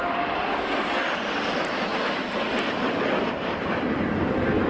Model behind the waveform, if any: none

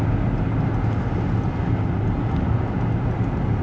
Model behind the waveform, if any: none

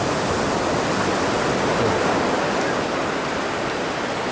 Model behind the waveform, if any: none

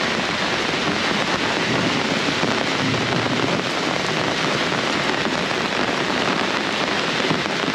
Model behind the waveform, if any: none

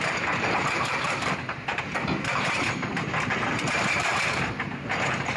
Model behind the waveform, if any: vocoder, BigVGAN v2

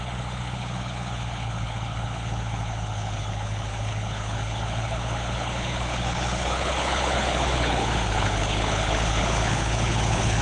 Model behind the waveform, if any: codec, HILCodec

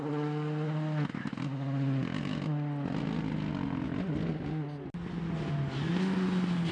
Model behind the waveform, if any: none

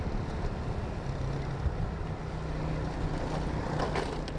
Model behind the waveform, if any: none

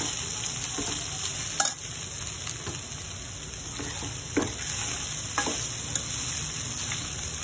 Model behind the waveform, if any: none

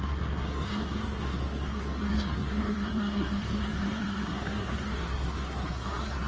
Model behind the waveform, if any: codec, SNAC